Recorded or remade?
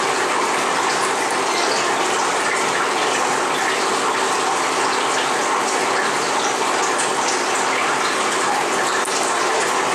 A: recorded